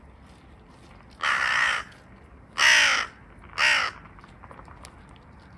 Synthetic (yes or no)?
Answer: no